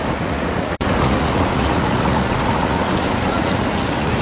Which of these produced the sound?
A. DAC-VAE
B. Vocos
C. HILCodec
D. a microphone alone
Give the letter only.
B